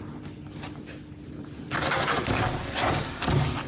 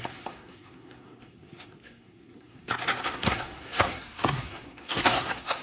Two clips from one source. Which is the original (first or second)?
first